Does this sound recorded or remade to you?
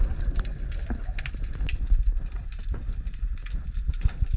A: recorded